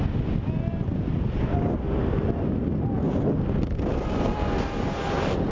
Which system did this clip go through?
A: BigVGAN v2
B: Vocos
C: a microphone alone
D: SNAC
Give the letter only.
C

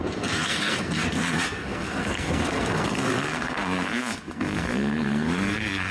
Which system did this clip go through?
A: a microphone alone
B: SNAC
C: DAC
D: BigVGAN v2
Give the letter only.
B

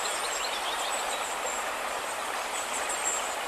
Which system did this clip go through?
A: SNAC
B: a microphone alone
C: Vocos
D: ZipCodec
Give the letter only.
B